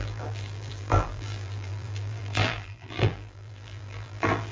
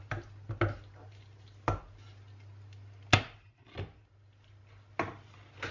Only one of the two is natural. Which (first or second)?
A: second